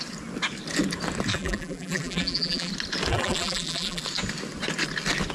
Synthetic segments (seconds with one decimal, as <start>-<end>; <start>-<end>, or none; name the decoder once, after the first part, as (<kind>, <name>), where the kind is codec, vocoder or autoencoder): 1.3-2.7 (vocoder, BigVGAN v2); 3.1-4.0